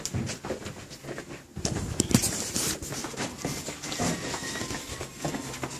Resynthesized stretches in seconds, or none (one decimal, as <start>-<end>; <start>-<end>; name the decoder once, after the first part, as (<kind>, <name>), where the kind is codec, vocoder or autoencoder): 1.5-3.0 (vocoder, BigVGAN v2)